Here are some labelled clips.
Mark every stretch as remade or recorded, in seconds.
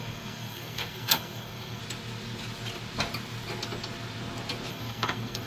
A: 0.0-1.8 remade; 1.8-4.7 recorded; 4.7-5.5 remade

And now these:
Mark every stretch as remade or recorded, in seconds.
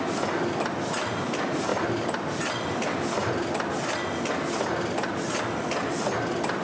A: 0.0-6.6 recorded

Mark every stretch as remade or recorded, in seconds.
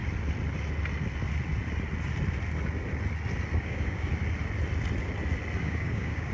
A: 0.0-3.6 recorded; 3.6-4.1 remade; 4.1-5.6 recorded; 5.6-6.3 remade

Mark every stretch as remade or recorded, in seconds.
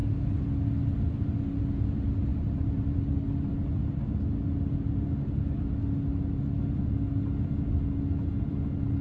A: 0.0-2.3 recorded; 2.3-3.0 remade; 3.0-9.0 recorded